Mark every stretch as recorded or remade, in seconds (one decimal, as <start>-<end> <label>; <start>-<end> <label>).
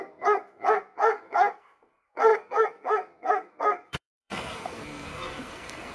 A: 0.0-5.9 remade